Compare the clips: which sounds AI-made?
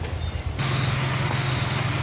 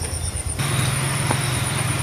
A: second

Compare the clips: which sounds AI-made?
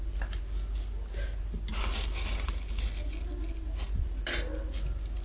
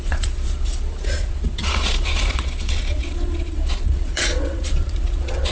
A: second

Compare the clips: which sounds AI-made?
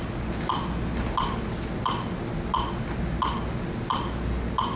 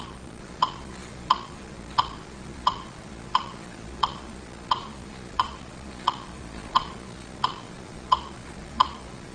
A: second